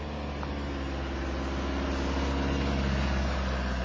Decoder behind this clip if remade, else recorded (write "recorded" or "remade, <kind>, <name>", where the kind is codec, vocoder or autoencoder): recorded